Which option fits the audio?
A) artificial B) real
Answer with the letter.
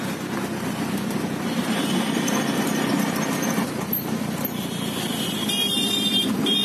A